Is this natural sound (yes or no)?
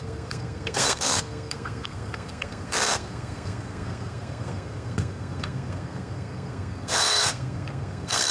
no